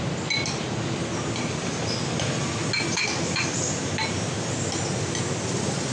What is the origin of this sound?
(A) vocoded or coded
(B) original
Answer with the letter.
B